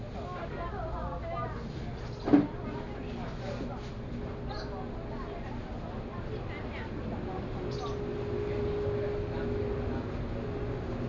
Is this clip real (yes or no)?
yes